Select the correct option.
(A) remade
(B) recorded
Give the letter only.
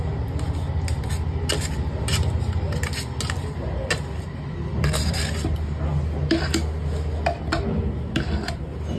B